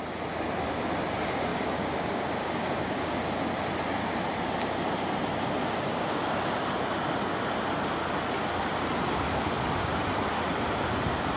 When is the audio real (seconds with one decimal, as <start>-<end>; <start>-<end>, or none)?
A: 0.0-1.5; 3.1-5.9; 6.4-11.4